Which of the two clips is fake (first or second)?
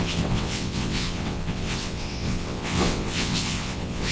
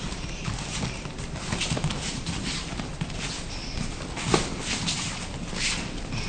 first